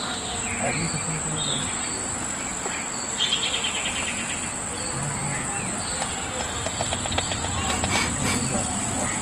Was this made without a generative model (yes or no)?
yes